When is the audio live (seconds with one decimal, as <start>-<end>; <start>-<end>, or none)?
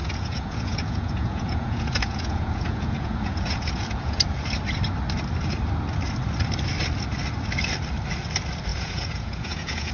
4.2-8.7